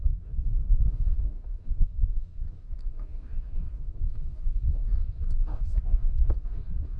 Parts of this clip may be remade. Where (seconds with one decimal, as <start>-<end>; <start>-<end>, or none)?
0.0-7.0